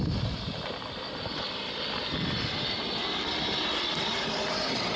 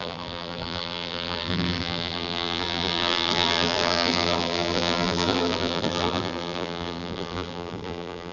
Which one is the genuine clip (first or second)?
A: first